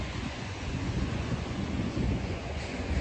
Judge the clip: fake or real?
fake